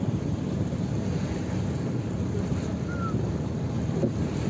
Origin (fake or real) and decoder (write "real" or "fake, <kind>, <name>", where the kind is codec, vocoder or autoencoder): real